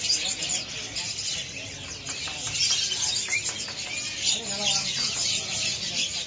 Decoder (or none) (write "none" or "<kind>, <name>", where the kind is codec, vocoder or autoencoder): none